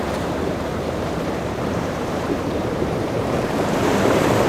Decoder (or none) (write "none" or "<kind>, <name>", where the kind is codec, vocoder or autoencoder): vocoder, BigVGAN v2